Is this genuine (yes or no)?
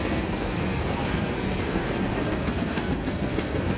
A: no